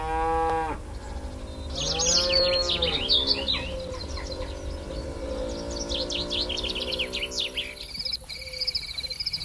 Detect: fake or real real